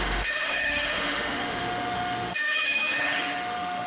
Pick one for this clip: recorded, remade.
remade